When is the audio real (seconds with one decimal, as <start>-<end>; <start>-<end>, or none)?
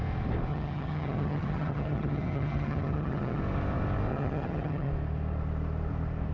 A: 0.0-0.5; 3.4-4.1; 4.9-6.3